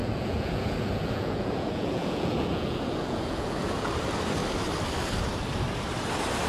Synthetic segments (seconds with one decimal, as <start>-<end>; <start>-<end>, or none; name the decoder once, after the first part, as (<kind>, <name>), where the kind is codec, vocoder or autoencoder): 0.0-3.9 (vocoder, Vocos)